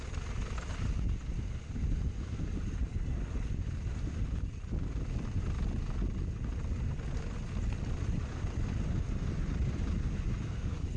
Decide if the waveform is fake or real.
real